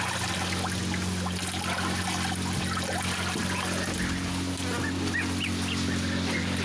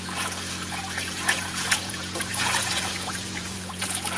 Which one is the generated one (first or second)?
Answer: second